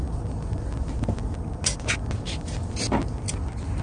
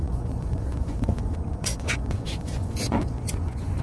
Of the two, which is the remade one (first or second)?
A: second